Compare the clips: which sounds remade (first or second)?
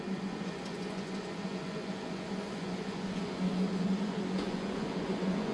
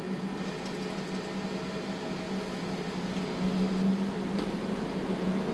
first